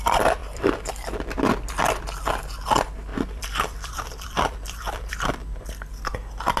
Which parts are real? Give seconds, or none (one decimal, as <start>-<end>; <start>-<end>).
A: 0.0-0.4; 1.7-3.1; 5.1-6.6

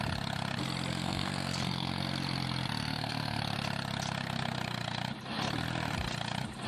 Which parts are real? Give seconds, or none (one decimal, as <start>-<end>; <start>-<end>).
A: 0.0-0.9; 2.0-2.8; 3.4-6.7

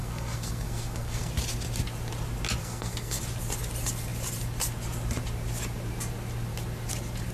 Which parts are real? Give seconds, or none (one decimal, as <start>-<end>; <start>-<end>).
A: 1.3-2.6; 3.2-7.3

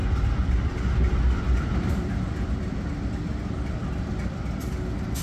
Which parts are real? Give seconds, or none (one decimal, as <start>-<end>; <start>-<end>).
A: 3.1-5.2